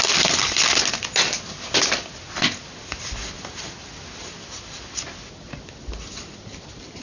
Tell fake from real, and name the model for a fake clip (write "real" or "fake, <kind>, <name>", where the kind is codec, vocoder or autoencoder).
real